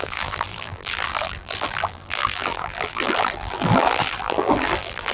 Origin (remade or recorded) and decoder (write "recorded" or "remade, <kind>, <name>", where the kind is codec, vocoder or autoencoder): remade, vocoder, BigVGAN v2